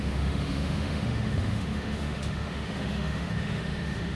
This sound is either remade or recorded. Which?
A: remade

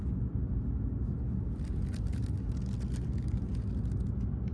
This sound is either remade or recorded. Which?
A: recorded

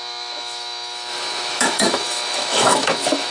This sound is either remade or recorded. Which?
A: remade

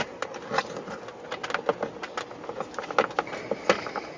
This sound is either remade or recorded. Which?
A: recorded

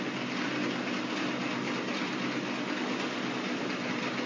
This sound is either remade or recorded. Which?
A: recorded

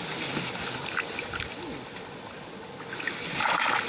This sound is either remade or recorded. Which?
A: recorded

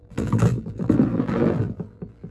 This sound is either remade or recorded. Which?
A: remade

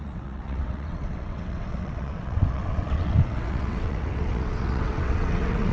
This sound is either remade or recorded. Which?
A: remade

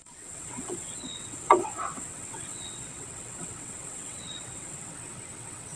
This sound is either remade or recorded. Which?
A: remade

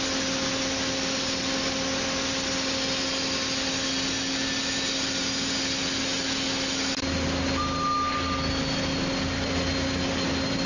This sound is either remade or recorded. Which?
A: recorded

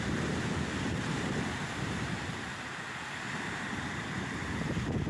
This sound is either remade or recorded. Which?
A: recorded